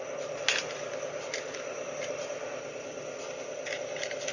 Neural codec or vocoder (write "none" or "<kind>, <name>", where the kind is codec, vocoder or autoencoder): none